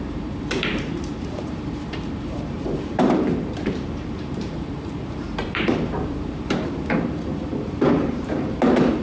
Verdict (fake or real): fake